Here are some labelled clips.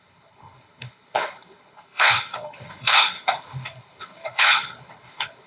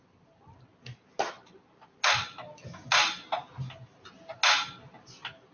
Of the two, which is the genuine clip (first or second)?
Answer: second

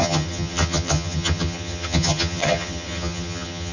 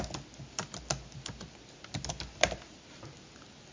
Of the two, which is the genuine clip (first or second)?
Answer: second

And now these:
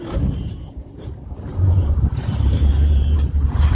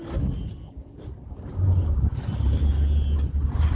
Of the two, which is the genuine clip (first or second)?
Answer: second